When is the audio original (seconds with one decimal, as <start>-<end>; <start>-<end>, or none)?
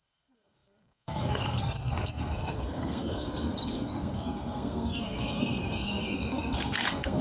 none